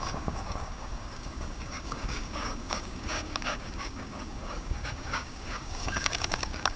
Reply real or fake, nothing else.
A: fake